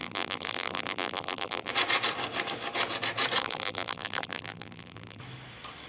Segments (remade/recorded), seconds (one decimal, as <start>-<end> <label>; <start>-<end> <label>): 0.0-1.7 remade; 1.7-3.4 recorded; 3.4-5.2 remade; 5.2-5.9 recorded